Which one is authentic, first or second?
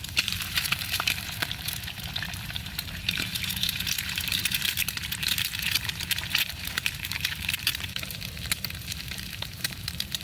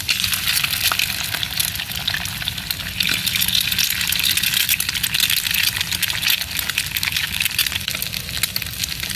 second